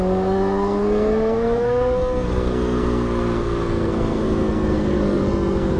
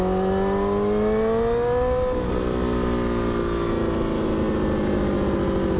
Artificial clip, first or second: first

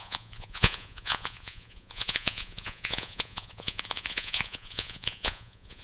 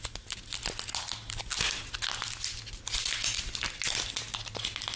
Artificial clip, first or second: first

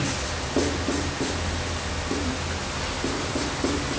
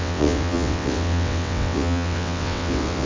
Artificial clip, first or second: second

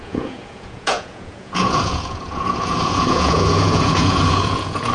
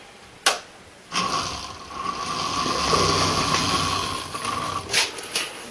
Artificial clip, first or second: first